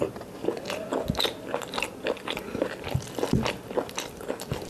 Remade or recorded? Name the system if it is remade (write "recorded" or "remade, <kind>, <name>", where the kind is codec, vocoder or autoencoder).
recorded